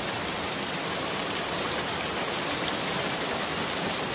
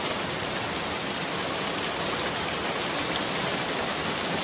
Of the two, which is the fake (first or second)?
first